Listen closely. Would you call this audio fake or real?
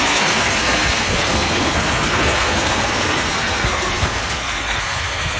fake